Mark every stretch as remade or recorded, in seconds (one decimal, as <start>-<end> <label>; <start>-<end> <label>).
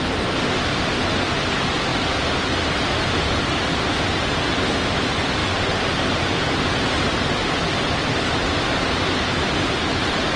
0.0-10.4 recorded